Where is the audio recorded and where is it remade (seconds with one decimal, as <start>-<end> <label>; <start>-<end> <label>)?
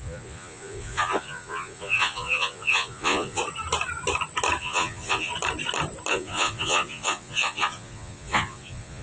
0.0-3.4 remade; 3.4-4.6 recorded; 4.6-5.3 remade; 5.3-6.1 recorded; 6.1-9.0 remade